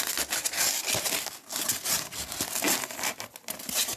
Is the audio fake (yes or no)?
no